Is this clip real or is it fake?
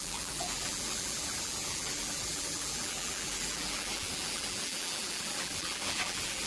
fake